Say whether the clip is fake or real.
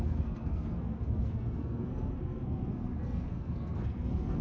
fake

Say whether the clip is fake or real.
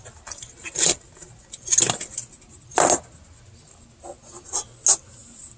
real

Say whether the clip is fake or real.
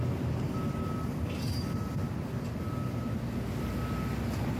real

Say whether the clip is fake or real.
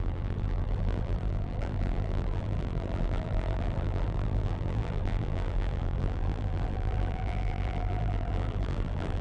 fake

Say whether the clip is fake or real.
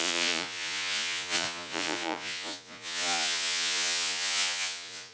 fake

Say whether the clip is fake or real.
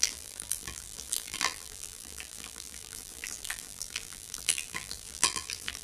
fake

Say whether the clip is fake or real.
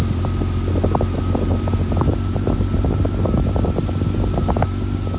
real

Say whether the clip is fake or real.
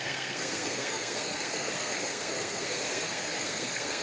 fake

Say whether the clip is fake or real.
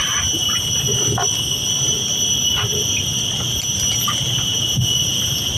real